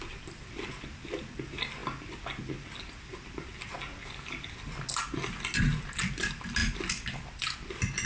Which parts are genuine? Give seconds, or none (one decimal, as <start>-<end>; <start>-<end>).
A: 0.0-8.1